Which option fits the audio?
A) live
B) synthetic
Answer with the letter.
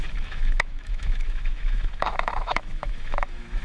B